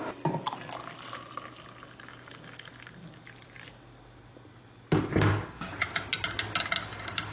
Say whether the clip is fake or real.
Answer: real